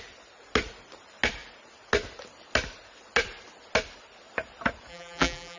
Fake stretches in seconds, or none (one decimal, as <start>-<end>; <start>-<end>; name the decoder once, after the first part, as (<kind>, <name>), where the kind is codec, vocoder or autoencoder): 4.9-5.6 (vocoder, BigVGAN v2)